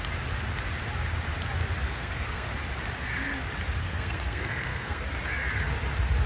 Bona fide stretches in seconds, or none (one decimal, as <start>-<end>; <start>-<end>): 0.0-1.8; 2.5-3.8; 5.0-6.3